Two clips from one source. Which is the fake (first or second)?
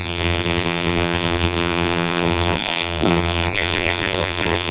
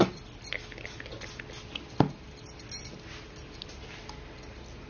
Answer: first